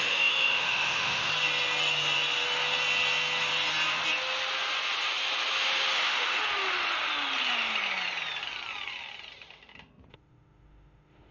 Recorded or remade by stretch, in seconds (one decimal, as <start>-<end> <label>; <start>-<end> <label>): 0.0-1.3 remade; 1.3-5.9 recorded; 5.9-6.4 remade; 6.4-10.1 recorded; 10.1-11.3 remade